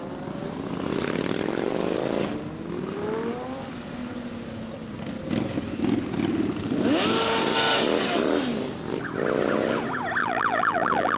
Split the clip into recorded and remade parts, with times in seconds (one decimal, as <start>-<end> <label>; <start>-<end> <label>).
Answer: 0.0-10.2 recorded; 10.2-11.2 remade